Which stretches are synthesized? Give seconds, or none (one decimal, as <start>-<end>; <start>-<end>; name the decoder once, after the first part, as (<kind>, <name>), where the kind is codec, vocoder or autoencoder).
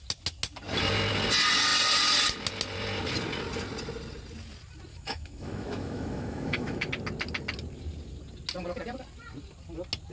4.9-6.9 (autoencoder, DAC-VAE)